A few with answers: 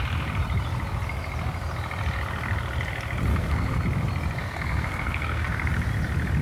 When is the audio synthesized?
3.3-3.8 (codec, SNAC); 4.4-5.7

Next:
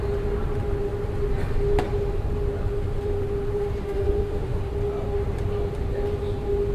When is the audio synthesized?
3.8-4.6 (autoencoder, DAC-VAE)

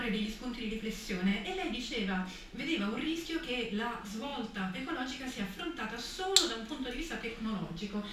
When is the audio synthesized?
none